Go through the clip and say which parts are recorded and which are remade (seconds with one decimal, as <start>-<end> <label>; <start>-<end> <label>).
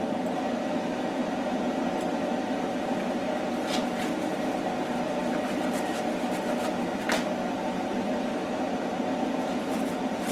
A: 0.0-10.3 recorded